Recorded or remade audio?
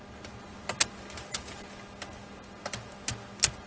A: recorded